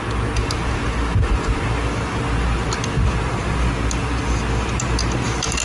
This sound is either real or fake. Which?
real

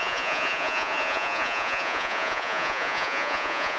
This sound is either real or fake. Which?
fake